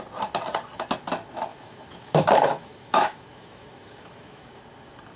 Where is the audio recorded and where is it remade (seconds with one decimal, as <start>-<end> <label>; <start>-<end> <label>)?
0.0-1.5 recorded; 1.5-4.6 remade; 4.6-5.2 recorded